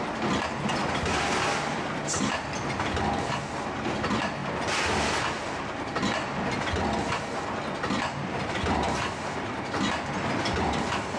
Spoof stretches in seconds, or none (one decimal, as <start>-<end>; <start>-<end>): none